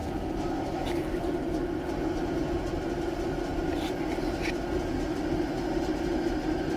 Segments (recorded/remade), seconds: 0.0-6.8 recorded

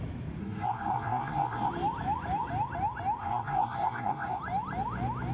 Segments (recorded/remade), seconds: 0.0-0.4 recorded; 0.4-1.7 remade; 1.7-3.2 recorded; 3.2-4.4 remade; 4.4-5.3 recorded